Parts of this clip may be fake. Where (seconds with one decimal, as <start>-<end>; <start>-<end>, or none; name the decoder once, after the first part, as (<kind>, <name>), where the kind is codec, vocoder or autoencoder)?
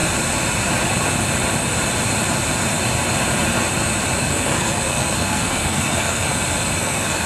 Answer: 4.2-6.3 (codec, SNAC); 6.8-7.3